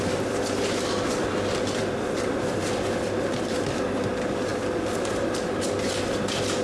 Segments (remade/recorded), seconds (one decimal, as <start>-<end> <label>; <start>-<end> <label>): 0.0-6.6 recorded